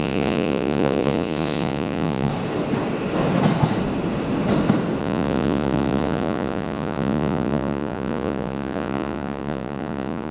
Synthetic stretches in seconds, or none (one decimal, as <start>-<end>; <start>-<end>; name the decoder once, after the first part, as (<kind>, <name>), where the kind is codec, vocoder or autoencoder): 0.0-2.3 (vocoder, Vocos); 5.0-10.3